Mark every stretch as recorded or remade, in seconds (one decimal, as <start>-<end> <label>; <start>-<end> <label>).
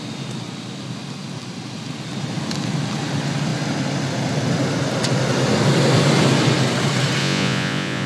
0.0-7.2 recorded; 7.2-8.1 remade